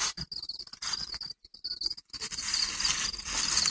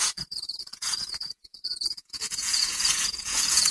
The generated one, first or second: second